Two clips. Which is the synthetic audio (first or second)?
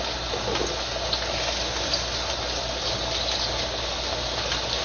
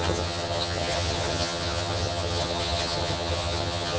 second